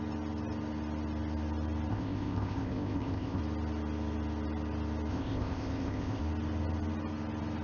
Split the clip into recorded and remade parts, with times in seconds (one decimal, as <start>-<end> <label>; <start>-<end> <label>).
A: 0.0-1.9 recorded; 1.9-3.4 remade; 3.4-5.1 recorded; 5.1-6.2 remade; 6.2-7.6 recorded